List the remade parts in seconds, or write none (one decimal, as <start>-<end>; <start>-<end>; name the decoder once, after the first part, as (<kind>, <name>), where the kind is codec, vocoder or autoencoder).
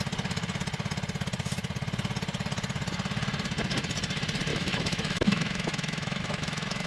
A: 4.5-6.9 (autoencoder, DAC-VAE)